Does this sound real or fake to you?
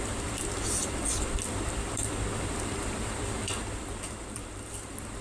fake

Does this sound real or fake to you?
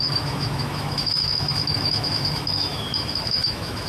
fake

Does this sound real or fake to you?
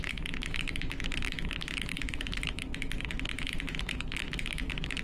fake